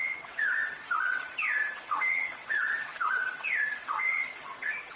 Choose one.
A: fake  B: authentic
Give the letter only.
A